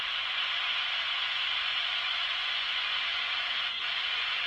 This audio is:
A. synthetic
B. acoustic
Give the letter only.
A